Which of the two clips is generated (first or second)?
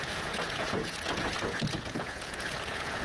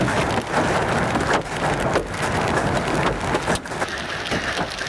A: first